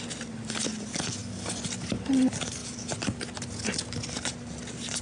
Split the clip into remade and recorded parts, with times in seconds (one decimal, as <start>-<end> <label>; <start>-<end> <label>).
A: 0.0-5.0 recorded